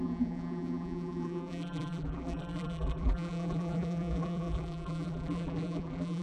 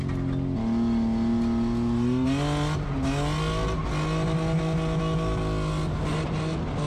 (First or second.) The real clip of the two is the second